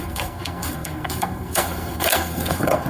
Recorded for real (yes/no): no